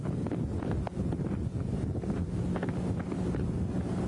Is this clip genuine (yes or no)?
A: yes